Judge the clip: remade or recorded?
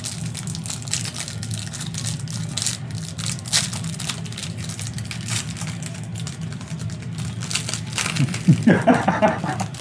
recorded